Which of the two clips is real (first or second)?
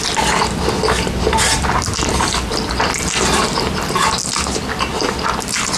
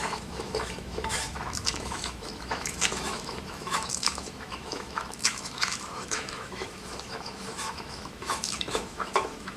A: first